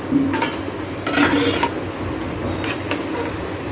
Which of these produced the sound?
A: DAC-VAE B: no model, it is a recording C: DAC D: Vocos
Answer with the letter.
B